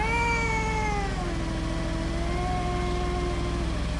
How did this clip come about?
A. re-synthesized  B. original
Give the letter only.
B